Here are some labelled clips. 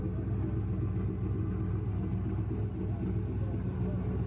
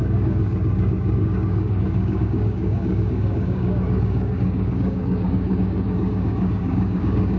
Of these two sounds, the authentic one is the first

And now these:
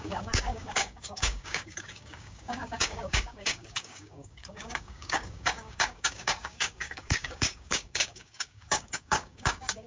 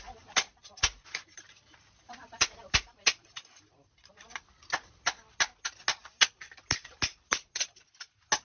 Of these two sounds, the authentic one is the second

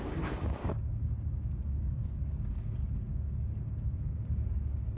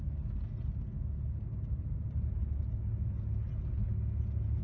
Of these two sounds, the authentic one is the second